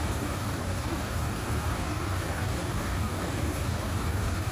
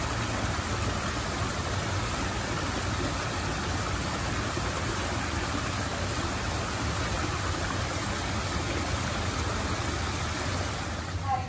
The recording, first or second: second